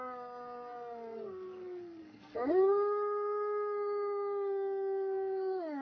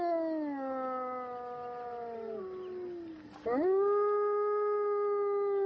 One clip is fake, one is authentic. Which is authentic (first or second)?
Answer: second